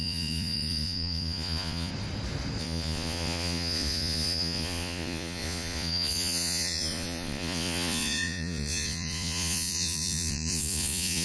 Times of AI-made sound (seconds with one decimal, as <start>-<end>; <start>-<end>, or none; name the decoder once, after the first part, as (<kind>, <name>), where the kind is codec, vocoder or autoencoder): 0.0-1.9 (vocoder, Vocos); 2.6-11.2